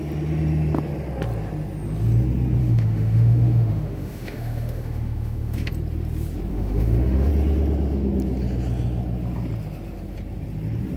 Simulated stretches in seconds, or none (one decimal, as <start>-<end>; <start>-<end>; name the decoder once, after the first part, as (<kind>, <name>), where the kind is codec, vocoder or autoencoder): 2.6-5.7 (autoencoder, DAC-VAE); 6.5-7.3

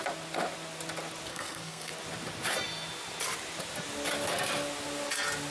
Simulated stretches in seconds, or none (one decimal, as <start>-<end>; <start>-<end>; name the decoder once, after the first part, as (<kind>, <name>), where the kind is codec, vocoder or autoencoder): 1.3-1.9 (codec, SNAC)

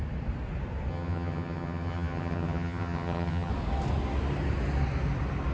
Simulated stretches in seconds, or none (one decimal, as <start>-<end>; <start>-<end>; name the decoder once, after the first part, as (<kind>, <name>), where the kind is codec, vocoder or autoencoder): 0.9-3.5 (vocoder, HiFi-GAN)